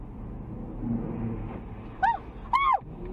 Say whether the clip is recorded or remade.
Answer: recorded